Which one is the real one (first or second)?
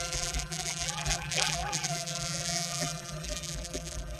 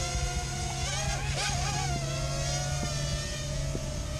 second